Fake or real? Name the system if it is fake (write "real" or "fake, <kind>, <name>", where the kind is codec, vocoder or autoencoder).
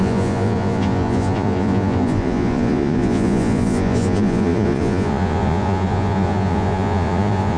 fake, vocoder, Vocos